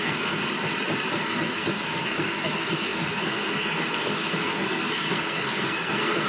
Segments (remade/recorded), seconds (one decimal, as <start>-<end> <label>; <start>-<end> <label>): 0.0-0.4 remade; 0.4-1.1 recorded; 1.1-6.3 remade